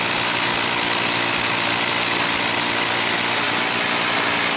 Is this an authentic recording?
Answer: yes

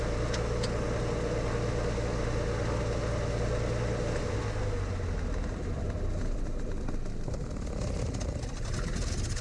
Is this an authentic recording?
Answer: yes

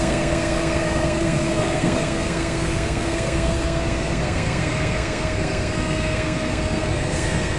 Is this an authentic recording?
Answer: no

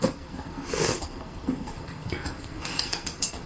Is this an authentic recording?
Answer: no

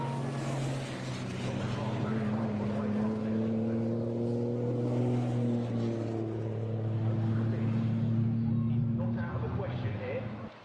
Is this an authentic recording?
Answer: yes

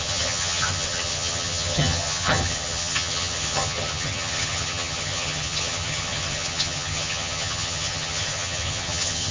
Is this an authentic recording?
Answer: no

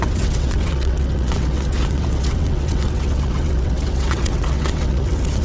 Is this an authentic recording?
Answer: no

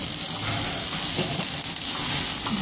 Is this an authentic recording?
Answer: yes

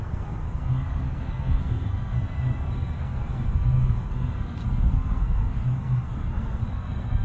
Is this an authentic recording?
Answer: no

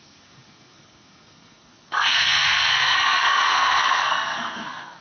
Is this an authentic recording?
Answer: no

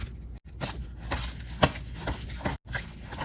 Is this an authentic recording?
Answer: yes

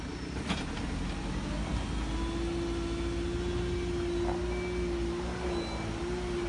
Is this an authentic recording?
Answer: yes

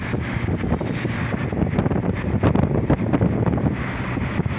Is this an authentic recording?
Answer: yes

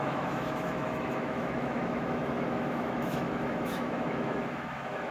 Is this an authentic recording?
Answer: no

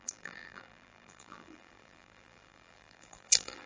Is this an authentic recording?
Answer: no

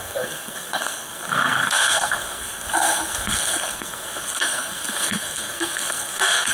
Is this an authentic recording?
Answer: no